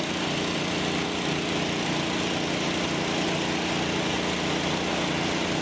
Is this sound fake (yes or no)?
no